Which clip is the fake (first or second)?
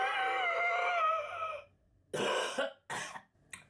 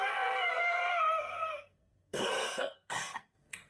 second